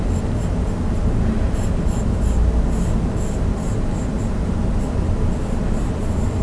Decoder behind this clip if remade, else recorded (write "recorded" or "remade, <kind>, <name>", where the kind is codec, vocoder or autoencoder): recorded